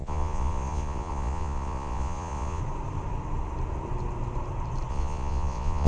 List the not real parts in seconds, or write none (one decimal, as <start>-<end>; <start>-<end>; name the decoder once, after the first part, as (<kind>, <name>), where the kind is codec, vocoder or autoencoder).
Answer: 0.0-2.6 (vocoder, Vocos); 4.9-5.9